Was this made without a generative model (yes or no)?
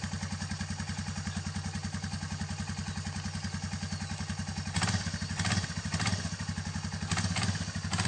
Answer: yes